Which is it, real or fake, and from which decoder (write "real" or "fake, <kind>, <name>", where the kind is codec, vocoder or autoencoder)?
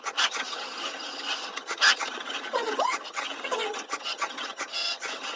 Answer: fake, vocoder, HiFi-GAN